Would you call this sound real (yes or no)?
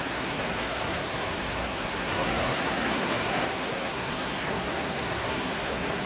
no